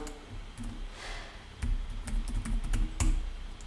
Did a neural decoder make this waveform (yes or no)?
no